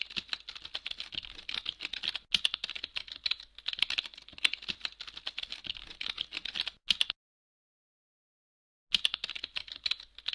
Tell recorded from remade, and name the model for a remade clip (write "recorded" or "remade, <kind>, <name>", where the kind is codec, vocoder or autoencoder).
recorded